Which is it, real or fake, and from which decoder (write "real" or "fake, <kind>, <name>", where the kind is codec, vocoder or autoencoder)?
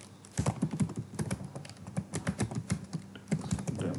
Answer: real